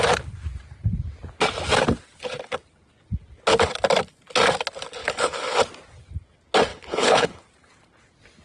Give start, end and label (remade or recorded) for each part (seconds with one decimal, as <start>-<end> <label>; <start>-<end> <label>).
0.0-5.0 recorded; 5.0-5.6 remade; 5.6-6.7 recorded; 6.7-7.4 remade; 7.4-8.4 recorded